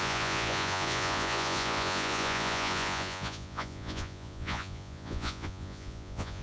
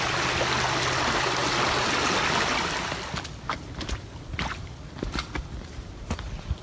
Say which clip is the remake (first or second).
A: first